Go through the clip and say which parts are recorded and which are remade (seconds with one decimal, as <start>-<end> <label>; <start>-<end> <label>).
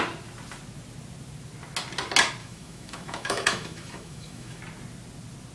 0.0-2.4 recorded; 2.4-4.6 remade; 4.6-5.5 recorded